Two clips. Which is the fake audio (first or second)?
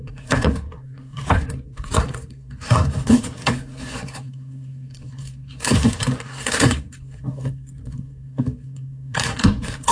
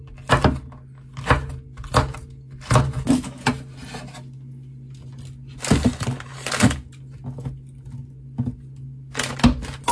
first